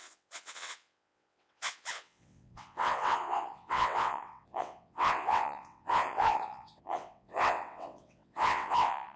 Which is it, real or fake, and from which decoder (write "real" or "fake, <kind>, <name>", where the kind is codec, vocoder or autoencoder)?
fake, vocoder, WaveNeXt